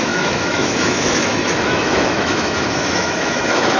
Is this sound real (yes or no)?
no